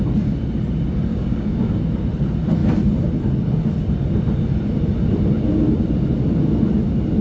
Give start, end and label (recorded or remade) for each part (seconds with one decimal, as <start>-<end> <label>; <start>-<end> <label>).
0.0-1.1 recorded; 1.1-1.8 remade; 1.8-7.2 recorded